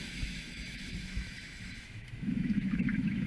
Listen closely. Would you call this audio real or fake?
fake